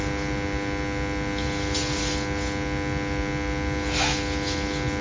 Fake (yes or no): no